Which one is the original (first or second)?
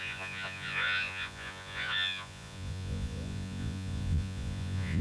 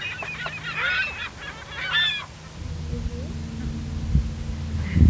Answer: second